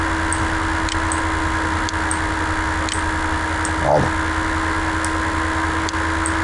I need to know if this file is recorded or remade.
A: recorded